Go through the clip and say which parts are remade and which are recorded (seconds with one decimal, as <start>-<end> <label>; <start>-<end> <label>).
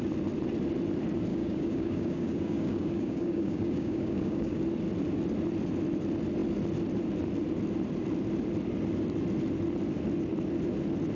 0.0-1.3 recorded; 1.3-4.6 remade; 4.6-11.2 recorded